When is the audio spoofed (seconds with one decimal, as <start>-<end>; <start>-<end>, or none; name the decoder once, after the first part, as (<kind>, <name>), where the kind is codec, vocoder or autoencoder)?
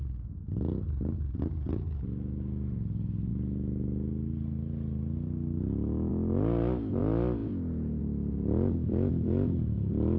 7.4-8.0 (vocoder, Vocos)